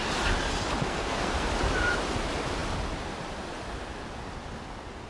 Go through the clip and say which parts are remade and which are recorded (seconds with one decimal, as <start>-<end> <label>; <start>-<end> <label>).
0.0-0.8 recorded; 0.8-1.5 remade; 1.5-5.1 recorded